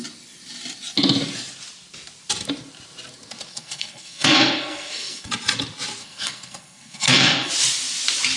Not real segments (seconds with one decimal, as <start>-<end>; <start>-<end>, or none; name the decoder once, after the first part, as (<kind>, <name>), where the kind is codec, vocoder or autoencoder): 3.5-5.3 (codec, SNAC); 6.0-7.5